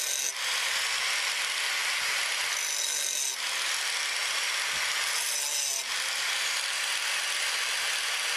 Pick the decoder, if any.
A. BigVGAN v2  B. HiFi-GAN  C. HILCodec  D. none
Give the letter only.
D